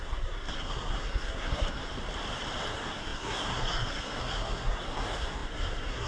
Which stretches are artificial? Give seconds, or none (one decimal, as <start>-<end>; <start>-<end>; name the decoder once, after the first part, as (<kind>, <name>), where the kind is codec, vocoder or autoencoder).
0.0-1.9 (codec, SNAC); 2.7-6.1